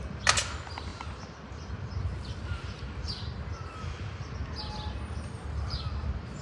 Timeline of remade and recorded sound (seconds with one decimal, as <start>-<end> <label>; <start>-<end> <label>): 0.0-6.4 recorded